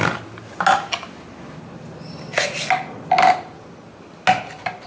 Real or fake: real